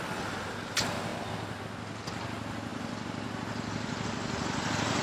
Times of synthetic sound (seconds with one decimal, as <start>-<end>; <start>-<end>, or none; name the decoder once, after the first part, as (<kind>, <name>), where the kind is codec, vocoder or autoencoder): none